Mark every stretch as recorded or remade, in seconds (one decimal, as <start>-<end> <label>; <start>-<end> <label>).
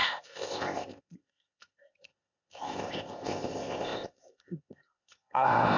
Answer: 0.0-5.8 remade